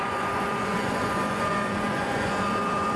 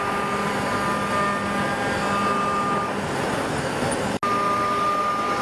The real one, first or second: second